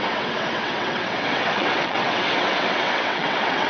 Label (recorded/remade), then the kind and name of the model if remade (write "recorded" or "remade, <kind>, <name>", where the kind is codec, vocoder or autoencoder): remade, vocoder, WaveNeXt